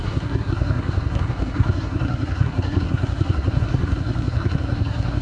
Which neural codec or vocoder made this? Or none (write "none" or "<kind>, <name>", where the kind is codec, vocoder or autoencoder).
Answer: codec, SNAC